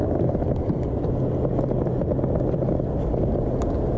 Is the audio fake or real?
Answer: real